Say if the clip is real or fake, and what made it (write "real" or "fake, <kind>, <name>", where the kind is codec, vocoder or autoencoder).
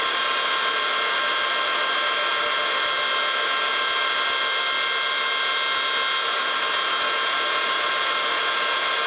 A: real